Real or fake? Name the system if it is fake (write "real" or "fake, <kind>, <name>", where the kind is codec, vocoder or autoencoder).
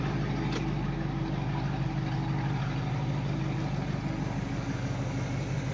real